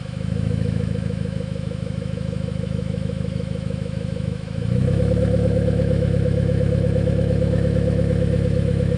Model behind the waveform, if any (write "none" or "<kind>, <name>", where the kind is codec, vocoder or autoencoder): autoencoder, DAC-VAE